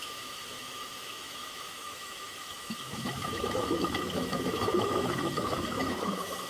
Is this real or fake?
fake